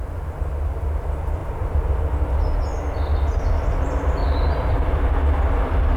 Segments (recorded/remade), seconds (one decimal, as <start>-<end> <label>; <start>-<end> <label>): 0.0-1.4 recorded; 1.4-2.0 remade; 2.0-4.2 recorded; 4.2-5.1 remade; 5.1-6.0 recorded